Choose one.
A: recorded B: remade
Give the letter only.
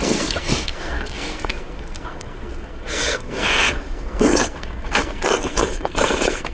B